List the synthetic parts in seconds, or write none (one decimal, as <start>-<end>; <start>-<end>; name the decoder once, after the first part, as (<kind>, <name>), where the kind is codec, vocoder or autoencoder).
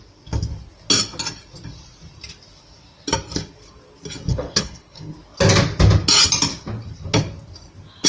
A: 4.3-5.1 (codec, HILCodec)